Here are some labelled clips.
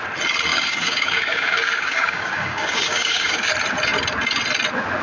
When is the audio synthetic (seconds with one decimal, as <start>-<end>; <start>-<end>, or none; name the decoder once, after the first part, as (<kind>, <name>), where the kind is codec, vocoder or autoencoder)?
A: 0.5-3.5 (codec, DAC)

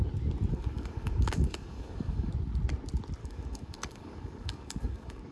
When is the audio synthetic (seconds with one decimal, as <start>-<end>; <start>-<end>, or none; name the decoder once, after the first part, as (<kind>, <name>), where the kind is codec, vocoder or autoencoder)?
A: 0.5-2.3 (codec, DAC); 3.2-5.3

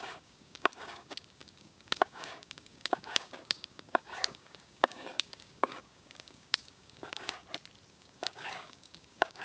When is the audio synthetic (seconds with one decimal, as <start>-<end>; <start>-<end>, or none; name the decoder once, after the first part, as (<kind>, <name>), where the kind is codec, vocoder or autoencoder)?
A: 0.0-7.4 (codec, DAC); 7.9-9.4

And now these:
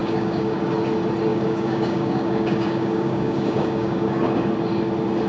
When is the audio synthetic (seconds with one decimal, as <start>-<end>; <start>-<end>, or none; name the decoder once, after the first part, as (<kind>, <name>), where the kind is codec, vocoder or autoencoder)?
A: 0.0-0.6 (codec, DAC); 1.3-4.5

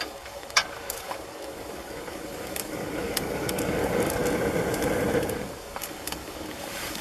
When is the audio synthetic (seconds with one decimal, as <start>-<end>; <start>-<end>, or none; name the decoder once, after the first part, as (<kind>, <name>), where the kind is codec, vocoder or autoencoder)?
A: 0.0-4.2 (codec, DAC); 5.3-7.0

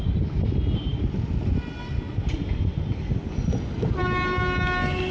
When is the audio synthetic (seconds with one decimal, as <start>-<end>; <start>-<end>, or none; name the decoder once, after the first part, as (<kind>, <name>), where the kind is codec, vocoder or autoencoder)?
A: none

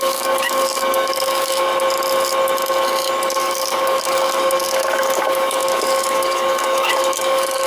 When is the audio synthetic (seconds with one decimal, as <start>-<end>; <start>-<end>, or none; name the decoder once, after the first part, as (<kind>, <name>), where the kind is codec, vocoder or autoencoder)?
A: 0.0-1.7 (codec, DAC); 3.3-7.7